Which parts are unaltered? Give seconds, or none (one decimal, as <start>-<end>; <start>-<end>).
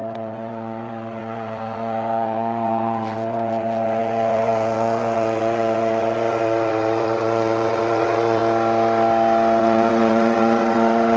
8.4-9.6